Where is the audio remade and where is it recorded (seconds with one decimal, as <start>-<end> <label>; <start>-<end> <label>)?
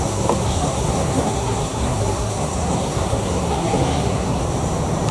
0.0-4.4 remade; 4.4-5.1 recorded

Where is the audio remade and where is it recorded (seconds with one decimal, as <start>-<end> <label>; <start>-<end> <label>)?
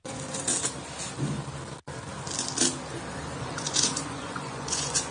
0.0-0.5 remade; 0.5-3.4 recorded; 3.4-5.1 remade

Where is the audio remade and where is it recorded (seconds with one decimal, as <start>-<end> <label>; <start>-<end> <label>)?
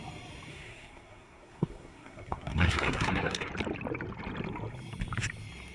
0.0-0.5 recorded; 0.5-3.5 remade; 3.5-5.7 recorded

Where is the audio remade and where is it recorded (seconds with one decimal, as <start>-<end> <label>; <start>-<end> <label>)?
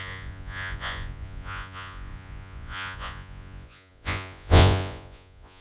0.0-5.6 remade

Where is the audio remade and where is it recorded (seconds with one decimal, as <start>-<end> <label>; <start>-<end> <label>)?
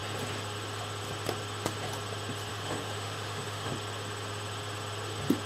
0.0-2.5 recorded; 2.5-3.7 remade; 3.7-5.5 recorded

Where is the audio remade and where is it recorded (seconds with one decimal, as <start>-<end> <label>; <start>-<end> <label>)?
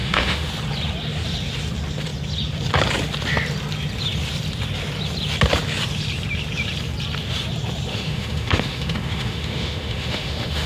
0.0-0.5 remade; 0.5-7.9 recorded; 7.9-10.7 remade